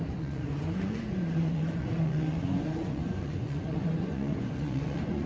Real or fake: fake